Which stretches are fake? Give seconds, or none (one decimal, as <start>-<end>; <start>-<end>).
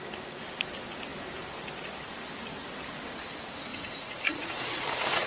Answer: 3.7-5.3